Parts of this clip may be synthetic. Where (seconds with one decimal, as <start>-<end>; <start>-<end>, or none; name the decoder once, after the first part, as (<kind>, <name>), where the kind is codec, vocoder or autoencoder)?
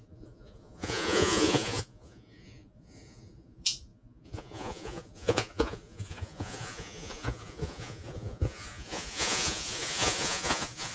0.0-10.9 (vocoder, Vocos)